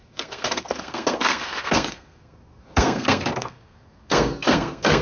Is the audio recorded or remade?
remade